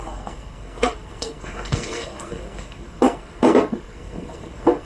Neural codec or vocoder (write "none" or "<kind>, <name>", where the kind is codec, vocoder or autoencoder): codec, SNAC